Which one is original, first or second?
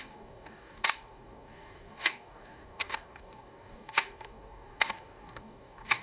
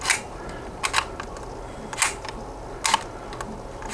second